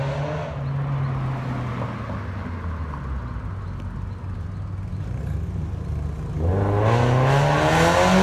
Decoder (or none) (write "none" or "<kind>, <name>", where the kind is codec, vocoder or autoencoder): none